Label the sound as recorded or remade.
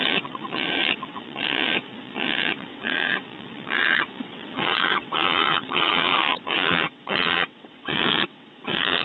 remade